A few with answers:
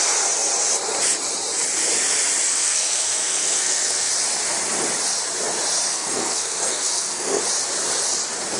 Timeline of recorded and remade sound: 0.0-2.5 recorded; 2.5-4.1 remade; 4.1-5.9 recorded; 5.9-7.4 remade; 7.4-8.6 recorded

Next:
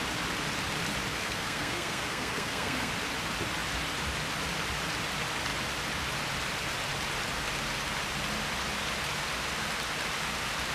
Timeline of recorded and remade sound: 0.0-1.1 recorded; 1.1-2.9 remade; 2.9-10.7 recorded

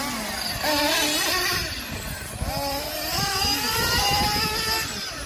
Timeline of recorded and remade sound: 0.0-5.3 recorded

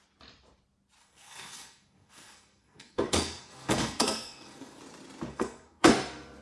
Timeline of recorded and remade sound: 0.0-1.0 recorded; 1.0-4.8 remade; 4.8-5.3 recorded; 5.3-5.9 remade; 5.9-6.4 recorded

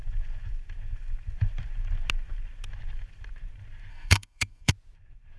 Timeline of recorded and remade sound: 0.0-3.9 recorded; 3.9-4.7 remade; 4.7-5.4 recorded

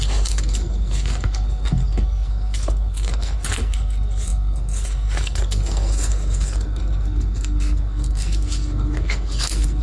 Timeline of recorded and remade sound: 0.0-9.8 remade

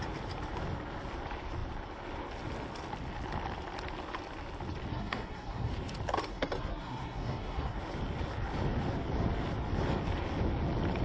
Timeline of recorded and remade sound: 0.0-4.9 recorded; 4.9-5.7 remade; 5.7-6.3 recorded; 6.3-7.8 remade; 7.8-11.0 recorded